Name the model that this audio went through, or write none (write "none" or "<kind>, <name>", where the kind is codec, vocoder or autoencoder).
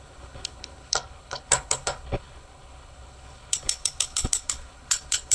codec, HILCodec